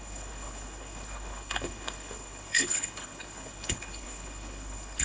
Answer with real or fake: fake